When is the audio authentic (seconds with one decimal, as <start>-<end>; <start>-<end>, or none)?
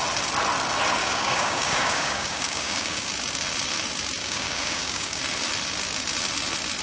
0.0-1.0; 3.1-4.2; 5.2-6.8